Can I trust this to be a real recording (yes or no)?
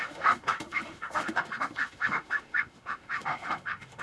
no